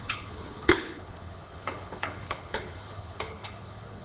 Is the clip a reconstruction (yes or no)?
yes